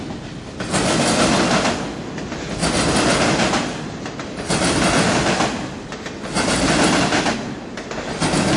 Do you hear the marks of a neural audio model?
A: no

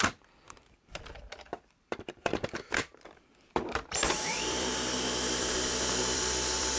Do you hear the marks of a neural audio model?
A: yes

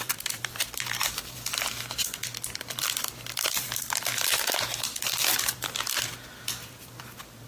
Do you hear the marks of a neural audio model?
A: yes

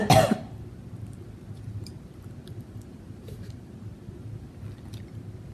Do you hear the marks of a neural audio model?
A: no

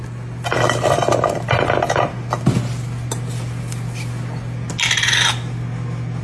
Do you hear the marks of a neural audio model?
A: no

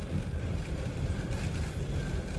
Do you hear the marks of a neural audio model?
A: yes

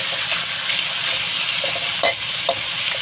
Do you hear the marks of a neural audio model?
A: yes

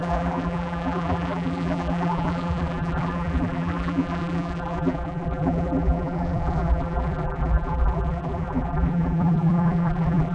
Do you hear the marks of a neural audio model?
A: yes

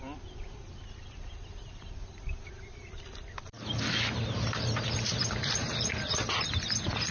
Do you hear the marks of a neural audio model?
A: yes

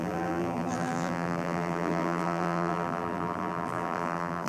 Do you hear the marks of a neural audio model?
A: yes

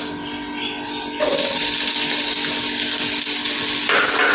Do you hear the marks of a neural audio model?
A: no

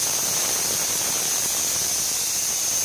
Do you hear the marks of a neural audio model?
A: yes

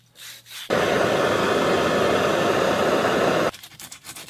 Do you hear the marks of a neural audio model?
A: yes